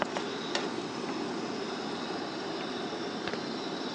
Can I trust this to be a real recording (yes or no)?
no